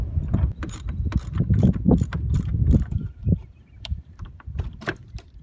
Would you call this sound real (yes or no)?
no